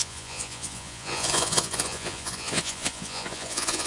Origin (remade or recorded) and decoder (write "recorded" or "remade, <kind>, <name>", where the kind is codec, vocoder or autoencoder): remade, vocoder, Vocos